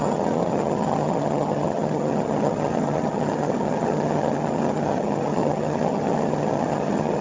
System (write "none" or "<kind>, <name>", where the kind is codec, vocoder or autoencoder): vocoder, HiFi-GAN